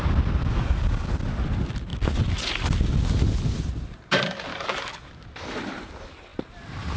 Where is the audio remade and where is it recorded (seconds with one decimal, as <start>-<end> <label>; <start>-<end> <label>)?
0.0-0.4 recorded; 0.4-1.1 remade; 1.1-4.5 recorded; 4.5-5.1 remade; 5.1-7.0 recorded